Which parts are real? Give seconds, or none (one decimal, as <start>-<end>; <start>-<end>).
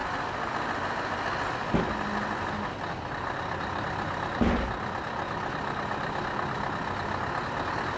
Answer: 0.0-8.0